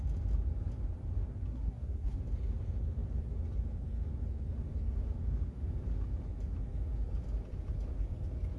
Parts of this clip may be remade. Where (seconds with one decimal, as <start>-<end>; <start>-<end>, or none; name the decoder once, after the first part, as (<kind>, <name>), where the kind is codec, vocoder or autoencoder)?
1.5-2.2 (codec, SNAC)